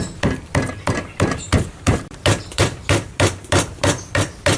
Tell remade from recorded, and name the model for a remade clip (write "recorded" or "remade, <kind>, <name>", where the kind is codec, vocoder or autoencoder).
remade, vocoder, BigVGAN v2